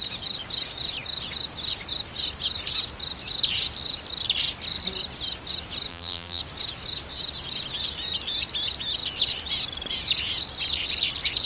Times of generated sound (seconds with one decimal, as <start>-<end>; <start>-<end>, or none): 5.9-6.4